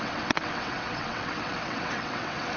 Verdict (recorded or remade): remade